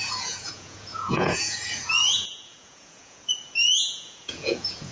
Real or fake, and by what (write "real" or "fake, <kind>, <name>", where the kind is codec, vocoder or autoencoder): fake, vocoder, Vocos